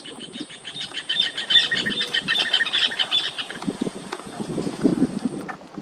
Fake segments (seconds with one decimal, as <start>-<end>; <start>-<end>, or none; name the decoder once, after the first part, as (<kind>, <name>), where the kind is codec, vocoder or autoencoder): 0.0-1.6 (vocoder, Vocos); 3.4-4.9